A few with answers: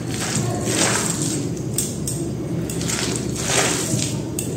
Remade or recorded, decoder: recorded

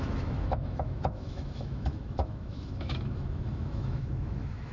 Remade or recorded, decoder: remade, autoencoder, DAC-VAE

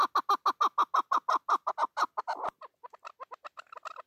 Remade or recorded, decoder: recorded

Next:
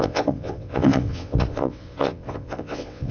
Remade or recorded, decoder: remade, vocoder, WaveNeXt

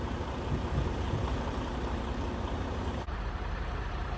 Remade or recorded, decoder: remade, vocoder, BigVGAN v2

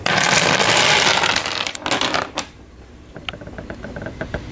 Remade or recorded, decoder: recorded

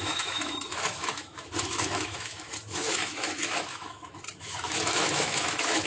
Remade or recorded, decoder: remade, autoencoder, DAC-VAE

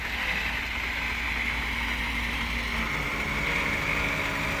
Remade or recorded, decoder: recorded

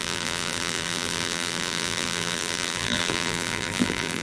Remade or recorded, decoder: remade, vocoder, BigVGAN v2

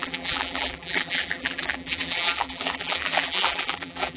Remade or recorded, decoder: remade, vocoder, BigVGAN v2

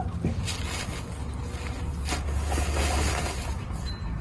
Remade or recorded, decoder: recorded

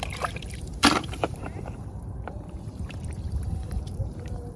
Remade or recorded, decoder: remade, vocoder, BigVGAN v2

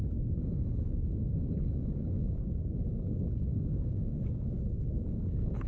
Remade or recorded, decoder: remade, codec, DAC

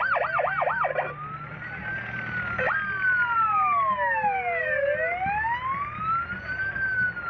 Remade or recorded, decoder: recorded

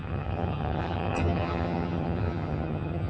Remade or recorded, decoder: remade, vocoder, HiFi-GAN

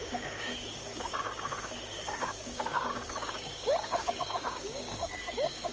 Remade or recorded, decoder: remade, codec, DAC